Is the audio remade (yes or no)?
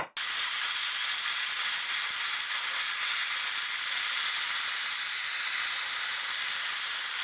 no